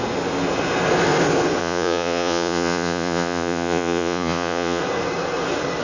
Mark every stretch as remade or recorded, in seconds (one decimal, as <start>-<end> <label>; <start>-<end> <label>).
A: 0.0-1.6 recorded; 1.6-4.8 remade; 4.8-5.8 recorded